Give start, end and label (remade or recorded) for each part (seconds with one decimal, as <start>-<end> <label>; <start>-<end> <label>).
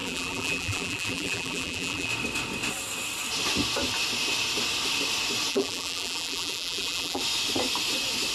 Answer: 0.0-2.1 remade; 2.1-5.5 recorded; 5.5-7.2 remade; 7.2-8.3 recorded